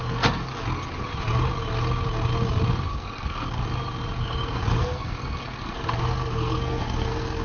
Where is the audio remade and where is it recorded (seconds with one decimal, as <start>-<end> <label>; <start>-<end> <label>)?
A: 0.0-0.5 remade; 0.5-2.9 recorded; 2.9-3.6 remade; 3.6-4.2 recorded; 4.2-7.4 remade